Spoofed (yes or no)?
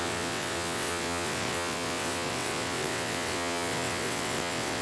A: yes